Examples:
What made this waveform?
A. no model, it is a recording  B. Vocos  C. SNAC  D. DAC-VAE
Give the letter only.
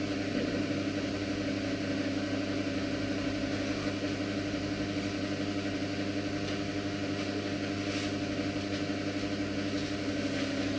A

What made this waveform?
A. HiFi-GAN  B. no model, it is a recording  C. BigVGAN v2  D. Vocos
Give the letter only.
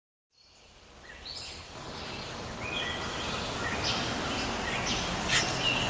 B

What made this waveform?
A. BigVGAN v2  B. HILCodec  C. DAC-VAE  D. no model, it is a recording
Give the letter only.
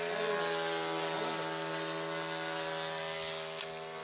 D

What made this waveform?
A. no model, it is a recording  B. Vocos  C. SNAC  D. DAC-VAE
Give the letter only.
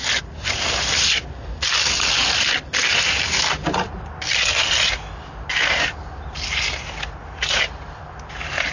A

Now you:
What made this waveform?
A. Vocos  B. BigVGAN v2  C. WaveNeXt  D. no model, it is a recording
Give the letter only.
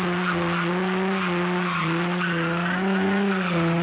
D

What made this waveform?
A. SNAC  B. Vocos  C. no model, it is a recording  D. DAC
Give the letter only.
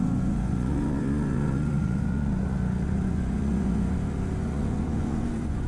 B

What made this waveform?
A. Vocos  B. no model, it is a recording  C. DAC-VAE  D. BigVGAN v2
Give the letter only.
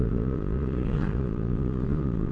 A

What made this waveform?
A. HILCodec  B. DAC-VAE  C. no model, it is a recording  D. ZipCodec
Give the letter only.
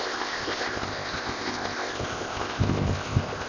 D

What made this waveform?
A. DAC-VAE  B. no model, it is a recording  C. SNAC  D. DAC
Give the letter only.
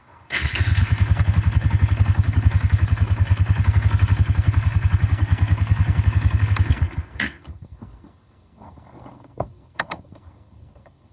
C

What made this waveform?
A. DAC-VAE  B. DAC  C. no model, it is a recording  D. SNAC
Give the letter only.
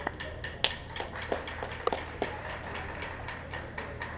C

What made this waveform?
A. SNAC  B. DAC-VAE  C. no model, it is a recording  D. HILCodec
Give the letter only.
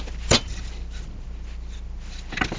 C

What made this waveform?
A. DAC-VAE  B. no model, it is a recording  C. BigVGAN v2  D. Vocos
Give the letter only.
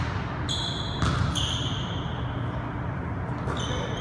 B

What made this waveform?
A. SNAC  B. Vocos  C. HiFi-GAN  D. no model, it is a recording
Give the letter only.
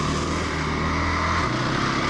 D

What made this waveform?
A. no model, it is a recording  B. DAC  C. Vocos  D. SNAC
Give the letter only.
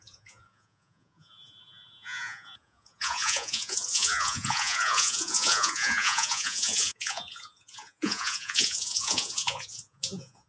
C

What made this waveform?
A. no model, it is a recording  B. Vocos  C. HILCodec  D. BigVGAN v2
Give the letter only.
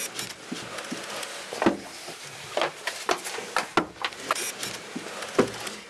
A